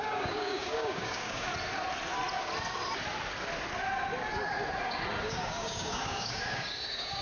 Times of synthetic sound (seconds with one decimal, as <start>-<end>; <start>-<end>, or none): 0.0-1.5; 5.2-7.2